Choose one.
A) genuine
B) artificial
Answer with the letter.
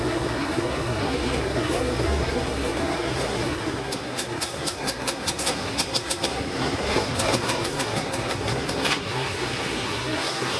B